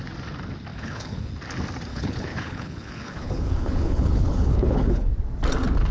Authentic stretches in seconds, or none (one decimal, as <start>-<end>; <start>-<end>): 0.0-0.7; 1.3-1.9; 5.1-5.9